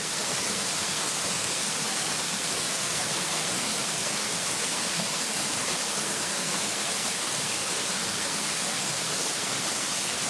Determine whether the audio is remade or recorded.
remade